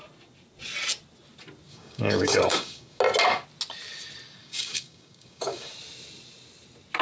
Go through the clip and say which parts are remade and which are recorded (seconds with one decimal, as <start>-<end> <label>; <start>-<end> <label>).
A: 0.0-1.7 recorded; 1.7-3.0 remade; 3.0-4.4 recorded; 4.4-5.7 remade; 5.7-7.0 recorded